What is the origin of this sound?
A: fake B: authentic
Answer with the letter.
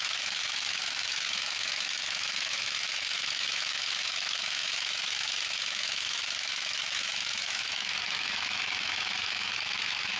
A